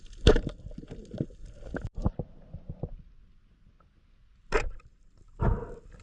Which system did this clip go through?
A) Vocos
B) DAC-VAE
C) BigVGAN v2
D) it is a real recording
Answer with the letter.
D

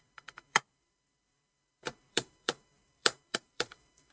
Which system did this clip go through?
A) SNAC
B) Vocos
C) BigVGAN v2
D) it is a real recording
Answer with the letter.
C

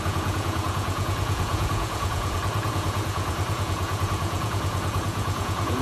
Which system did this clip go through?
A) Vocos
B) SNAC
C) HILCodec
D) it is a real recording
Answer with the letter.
A